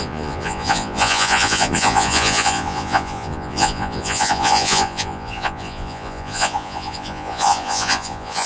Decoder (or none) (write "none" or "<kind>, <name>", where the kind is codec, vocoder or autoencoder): vocoder, Vocos